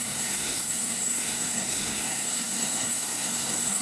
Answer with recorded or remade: remade